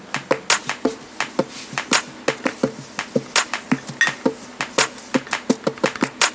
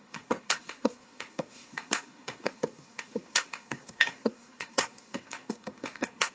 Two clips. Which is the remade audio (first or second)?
second